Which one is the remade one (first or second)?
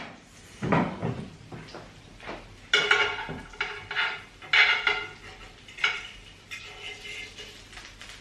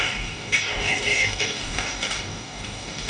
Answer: second